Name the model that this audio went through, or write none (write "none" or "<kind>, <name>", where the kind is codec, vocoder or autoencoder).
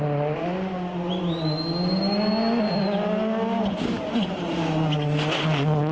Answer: none